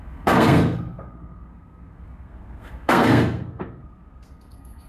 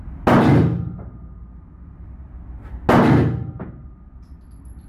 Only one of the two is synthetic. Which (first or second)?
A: first